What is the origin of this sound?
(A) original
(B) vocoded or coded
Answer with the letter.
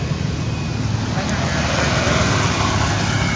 A